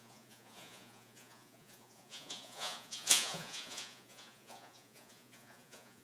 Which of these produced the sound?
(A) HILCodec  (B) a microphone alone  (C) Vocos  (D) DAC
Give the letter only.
C